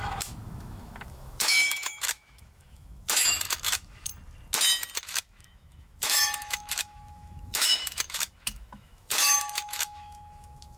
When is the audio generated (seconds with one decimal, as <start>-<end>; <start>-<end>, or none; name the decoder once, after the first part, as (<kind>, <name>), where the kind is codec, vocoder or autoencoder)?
0.0-4.1 (autoencoder, DAC-VAE); 5.0-10.8